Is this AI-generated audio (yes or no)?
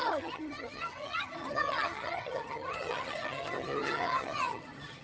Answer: yes